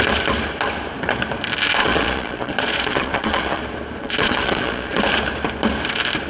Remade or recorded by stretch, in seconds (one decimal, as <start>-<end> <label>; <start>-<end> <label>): 0.0-1.8 recorded; 1.8-3.6 remade; 3.6-4.0 recorded; 4.0-5.0 remade; 5.0-6.3 recorded